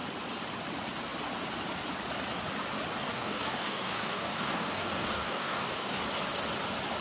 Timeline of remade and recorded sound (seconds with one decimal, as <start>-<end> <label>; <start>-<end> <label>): 0.0-3.1 recorded; 3.1-6.0 remade; 6.0-7.0 recorded